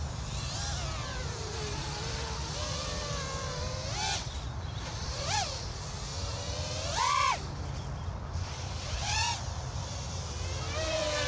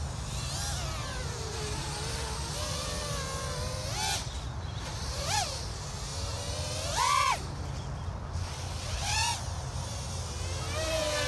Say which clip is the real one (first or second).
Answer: second